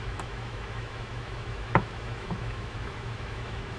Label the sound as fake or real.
fake